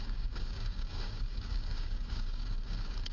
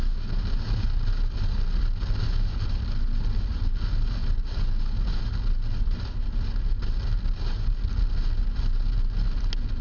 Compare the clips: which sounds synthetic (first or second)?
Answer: first